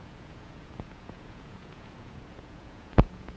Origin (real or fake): fake